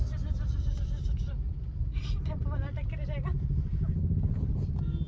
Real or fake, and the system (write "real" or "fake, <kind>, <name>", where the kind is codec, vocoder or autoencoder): real